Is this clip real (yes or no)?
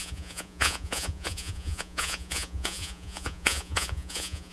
no